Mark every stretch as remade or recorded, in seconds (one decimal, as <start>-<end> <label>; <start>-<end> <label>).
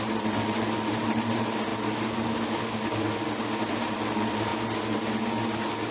0.0-1.7 remade; 1.7-3.7 recorded; 3.7-4.5 remade; 4.5-5.9 recorded